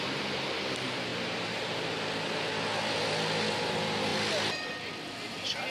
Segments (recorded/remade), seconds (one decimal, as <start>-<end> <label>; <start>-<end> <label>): 0.0-5.7 recorded